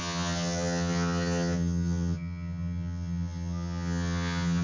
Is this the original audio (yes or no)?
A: no